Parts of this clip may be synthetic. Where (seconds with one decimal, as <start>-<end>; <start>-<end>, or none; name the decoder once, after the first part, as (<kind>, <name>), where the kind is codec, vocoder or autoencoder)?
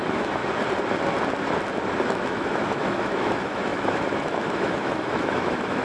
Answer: 0.0-0.4 (autoencoder, DAC-VAE); 2.1-5.8